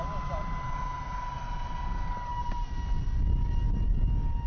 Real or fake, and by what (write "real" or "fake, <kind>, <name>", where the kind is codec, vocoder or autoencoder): real